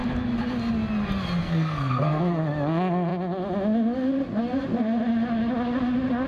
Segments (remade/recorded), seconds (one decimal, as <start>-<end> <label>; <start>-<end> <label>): 0.0-1.4 recorded; 1.4-2.4 remade; 2.4-6.3 recorded